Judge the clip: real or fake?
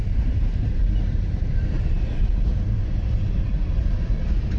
fake